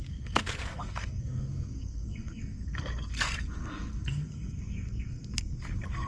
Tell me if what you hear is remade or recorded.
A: remade